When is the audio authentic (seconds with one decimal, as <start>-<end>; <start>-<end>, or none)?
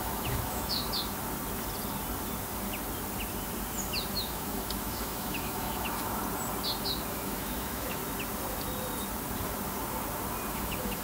0.8-4.1; 6.2-7.1; 8.0-10.5